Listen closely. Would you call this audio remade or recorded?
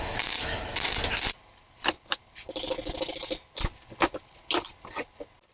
recorded